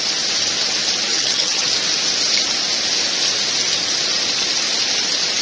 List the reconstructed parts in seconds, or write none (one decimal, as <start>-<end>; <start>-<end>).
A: 1.1-1.7